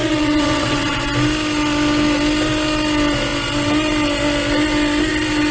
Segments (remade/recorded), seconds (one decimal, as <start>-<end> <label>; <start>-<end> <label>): 0.0-1.0 remade; 1.0-5.5 recorded